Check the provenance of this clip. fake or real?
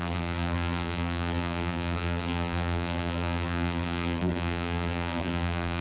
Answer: fake